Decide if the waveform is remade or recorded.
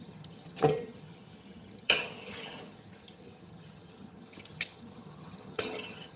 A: remade